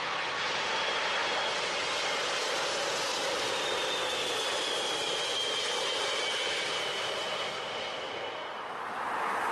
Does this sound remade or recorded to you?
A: recorded